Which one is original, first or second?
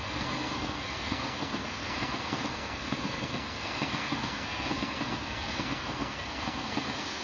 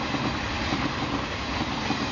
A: second